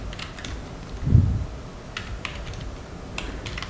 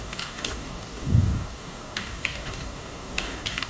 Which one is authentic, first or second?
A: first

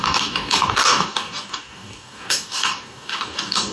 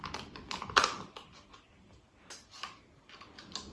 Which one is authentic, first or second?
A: second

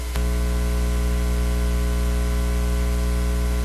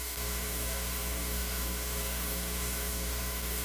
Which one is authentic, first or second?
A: first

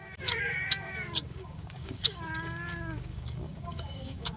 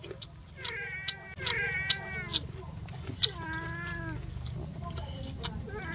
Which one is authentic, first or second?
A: second